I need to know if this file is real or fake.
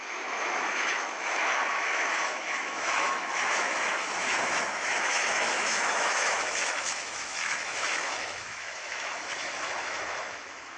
fake